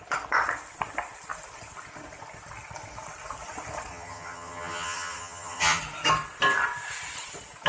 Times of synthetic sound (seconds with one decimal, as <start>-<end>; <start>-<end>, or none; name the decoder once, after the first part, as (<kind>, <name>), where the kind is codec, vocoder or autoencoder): 3.9-5.8 (vocoder, HiFi-GAN)